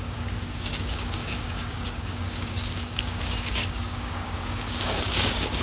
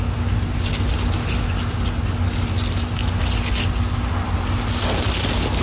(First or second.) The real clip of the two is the second